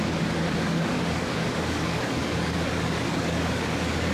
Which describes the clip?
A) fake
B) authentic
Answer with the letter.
A